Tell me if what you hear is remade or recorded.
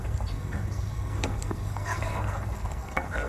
remade